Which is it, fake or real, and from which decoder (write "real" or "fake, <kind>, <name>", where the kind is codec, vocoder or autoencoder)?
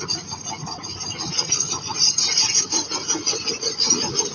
fake, vocoder, Vocos